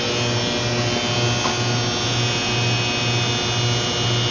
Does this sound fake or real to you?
real